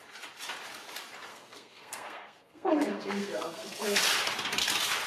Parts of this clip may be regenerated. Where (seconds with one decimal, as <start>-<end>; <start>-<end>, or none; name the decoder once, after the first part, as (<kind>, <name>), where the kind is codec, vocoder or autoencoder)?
1.3-4.0 (codec, SNAC)